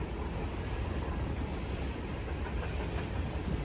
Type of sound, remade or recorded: recorded